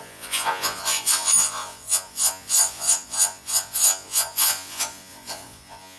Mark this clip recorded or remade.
remade